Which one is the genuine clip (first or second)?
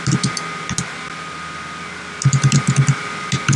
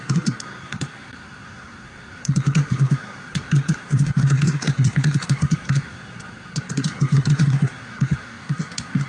first